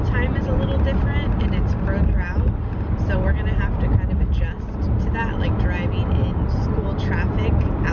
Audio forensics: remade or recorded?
recorded